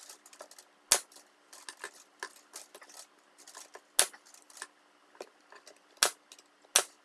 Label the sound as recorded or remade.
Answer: recorded